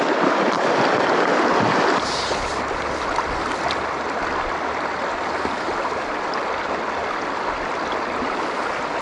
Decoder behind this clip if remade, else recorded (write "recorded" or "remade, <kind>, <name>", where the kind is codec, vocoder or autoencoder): recorded